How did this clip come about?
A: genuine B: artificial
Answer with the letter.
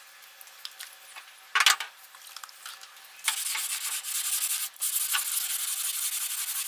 A